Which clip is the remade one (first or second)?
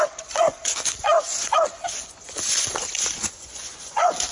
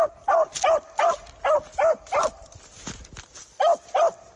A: first